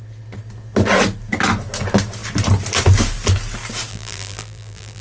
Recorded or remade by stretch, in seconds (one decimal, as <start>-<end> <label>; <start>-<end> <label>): 0.0-3.9 recorded; 3.9-5.0 remade